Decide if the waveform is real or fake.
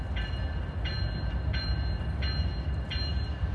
real